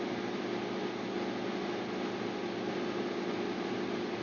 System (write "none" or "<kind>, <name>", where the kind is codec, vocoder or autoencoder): none